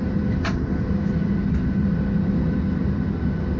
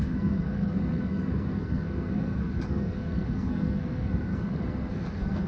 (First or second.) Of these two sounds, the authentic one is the first